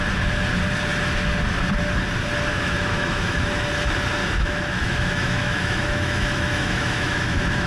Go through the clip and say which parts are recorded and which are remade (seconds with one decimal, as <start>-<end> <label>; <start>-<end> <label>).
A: 0.0-2.5 recorded; 2.5-3.7 remade; 3.7-4.2 recorded; 4.2-7.7 remade